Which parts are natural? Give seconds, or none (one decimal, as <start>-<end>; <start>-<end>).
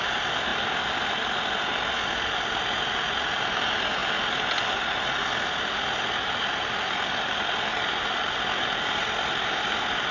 0.0-10.1